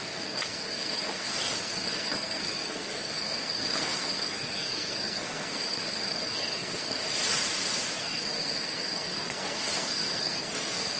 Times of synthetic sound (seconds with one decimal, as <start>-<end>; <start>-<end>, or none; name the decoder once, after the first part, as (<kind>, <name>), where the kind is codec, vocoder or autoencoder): 0.0-7.0 (codec, SNAC); 8.0-11.0